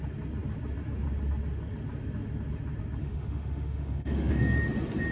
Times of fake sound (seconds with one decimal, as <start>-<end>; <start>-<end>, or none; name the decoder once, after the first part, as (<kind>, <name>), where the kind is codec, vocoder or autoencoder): 3.0-4.4 (autoencoder, DAC-VAE)